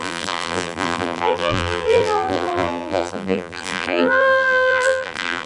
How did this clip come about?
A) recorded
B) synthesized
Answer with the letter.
B